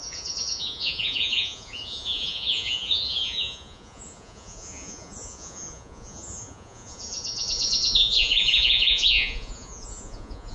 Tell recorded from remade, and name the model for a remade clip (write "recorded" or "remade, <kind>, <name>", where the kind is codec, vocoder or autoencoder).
remade, vocoder, Vocos